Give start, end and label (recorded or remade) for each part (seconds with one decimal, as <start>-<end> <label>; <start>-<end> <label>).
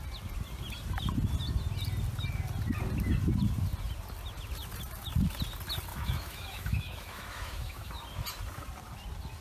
0.0-5.9 recorded; 5.9-7.9 remade; 7.9-9.4 recorded